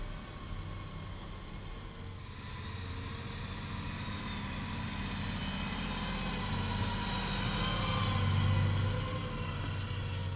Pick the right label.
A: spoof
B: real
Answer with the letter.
B